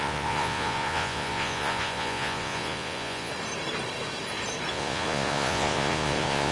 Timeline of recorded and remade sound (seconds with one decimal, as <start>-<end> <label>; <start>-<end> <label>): 0.0-3.3 remade; 3.3-4.7 recorded; 4.7-6.5 remade